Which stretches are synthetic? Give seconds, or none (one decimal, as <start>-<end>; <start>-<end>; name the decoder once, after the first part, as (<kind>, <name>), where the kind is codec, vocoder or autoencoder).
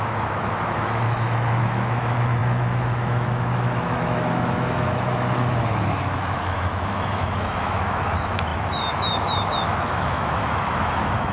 0.0-11.3 (autoencoder, DAC-VAE)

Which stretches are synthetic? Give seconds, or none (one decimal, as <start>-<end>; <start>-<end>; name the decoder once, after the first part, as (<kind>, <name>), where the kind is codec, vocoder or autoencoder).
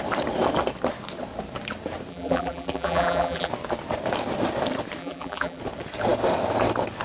2.1-3.5 (vocoder, BigVGAN v2); 5.0-5.6